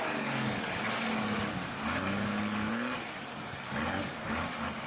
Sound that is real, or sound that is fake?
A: fake